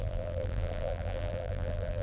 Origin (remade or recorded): remade